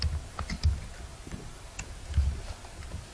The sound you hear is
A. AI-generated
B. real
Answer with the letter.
B